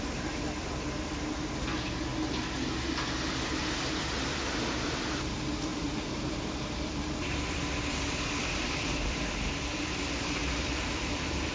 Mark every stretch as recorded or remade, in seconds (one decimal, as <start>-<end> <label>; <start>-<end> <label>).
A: 0.0-2.1 remade; 2.1-3.6 recorded; 3.6-11.5 remade